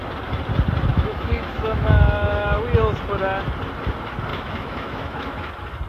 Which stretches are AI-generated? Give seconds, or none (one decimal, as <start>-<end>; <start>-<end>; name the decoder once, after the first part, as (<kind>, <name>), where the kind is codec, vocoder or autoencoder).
0.9-2.6 (autoencoder, DAC-VAE); 4.3-5.5